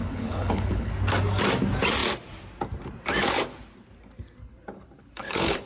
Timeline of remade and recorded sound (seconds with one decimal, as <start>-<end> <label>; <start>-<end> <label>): 0.0-0.9 remade; 0.9-4.4 recorded; 4.4-5.7 remade